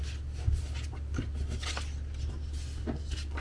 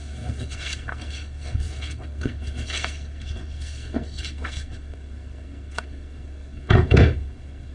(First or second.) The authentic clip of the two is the first